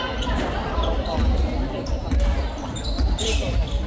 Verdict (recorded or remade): recorded